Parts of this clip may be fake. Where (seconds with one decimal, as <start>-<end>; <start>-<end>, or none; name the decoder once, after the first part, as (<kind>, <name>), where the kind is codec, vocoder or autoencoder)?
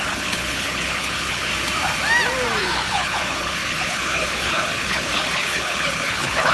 0.0-1.5 (codec, HILCodec); 2.6-6.5